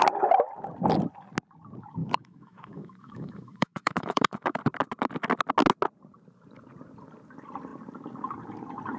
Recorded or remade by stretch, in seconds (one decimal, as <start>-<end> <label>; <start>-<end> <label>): 0.0-2.0 recorded; 2.0-4.6 remade; 4.6-9.0 recorded